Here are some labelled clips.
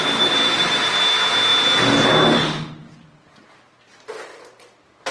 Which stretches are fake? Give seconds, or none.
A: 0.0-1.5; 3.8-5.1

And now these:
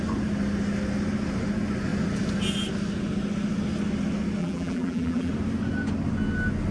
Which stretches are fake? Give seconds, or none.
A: 4.4-5.3

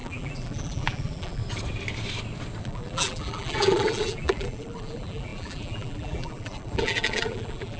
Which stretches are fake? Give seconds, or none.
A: 0.0-1.4; 2.6-7.8